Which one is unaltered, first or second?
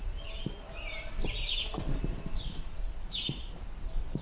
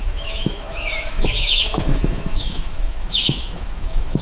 first